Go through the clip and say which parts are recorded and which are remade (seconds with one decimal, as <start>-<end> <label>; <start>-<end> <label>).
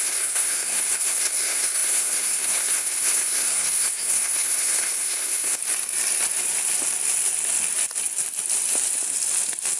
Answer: 0.0-5.6 remade; 5.6-9.8 recorded